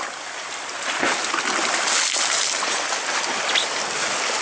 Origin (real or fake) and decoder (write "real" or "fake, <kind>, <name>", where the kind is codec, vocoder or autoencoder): real